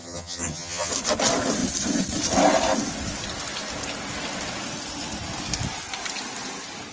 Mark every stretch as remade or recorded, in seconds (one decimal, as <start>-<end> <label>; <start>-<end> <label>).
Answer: 0.0-0.9 remade; 0.9-6.9 recorded